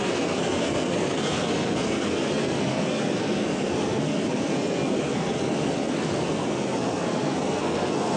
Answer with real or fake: fake